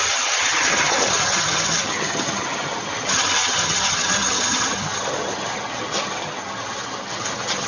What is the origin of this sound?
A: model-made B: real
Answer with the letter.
A